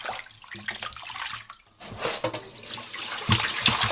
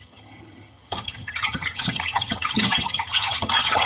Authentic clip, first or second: first